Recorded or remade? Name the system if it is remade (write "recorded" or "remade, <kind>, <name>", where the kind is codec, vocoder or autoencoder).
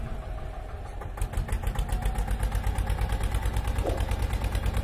recorded